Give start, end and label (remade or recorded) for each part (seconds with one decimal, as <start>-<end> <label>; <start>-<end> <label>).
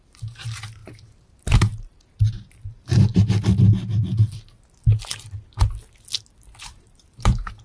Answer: 0.0-3.1 remade; 3.1-6.6 recorded; 6.6-7.6 remade